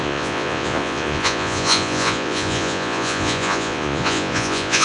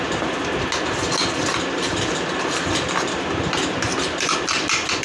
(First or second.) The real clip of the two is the second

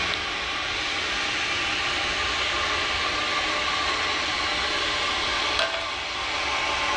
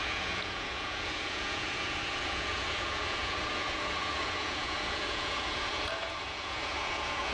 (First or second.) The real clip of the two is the first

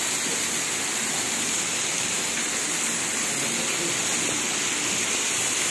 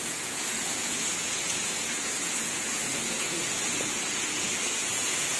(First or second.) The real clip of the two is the first